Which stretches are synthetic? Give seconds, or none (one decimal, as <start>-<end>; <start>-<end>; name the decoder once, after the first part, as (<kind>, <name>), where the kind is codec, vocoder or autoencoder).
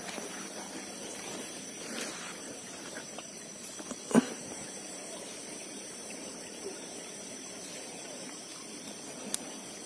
0.0-3.5 (vocoder, BigVGAN v2); 4.2-8.5; 9.1-9.9